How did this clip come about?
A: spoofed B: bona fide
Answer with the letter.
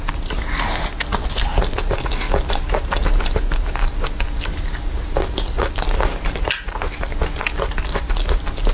B